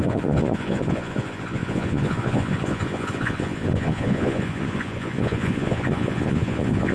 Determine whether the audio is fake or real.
fake